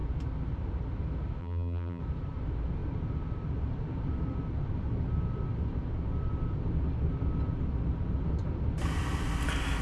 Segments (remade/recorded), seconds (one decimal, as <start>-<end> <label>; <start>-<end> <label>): 0.0-1.4 recorded; 1.4-2.0 remade; 2.0-9.8 recorded